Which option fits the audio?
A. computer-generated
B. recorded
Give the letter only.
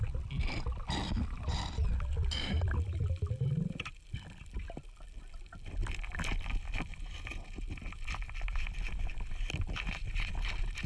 B